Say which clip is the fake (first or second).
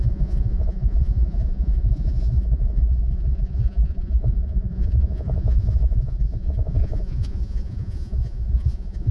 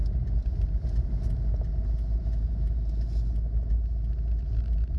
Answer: first